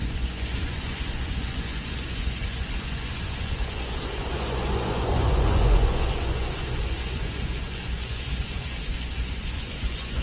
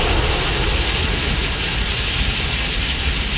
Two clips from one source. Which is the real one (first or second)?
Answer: second